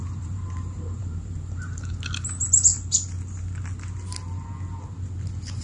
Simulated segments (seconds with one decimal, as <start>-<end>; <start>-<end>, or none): 0.0-1.9